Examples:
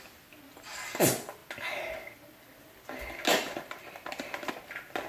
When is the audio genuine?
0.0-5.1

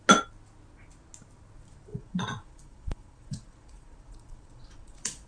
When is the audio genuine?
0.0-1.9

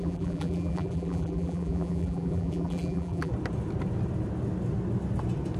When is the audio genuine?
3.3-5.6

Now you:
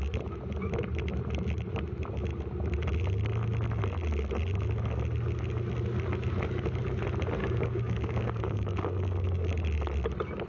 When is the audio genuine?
0.0-7.4; 9.5-10.5